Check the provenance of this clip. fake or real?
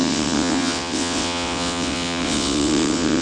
fake